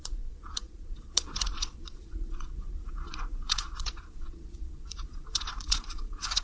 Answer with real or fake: fake